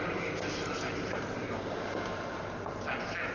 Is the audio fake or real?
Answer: real